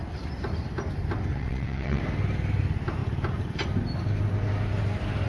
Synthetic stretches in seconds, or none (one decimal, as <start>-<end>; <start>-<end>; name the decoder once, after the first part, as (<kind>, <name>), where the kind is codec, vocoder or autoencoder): 1.3-2.0 (vocoder, WaveNeXt)